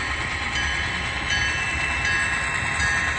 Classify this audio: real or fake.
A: real